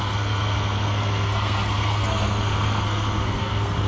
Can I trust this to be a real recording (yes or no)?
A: no